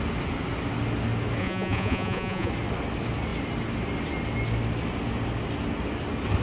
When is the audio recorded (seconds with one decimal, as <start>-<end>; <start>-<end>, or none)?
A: 0.0-1.4; 2.5-6.4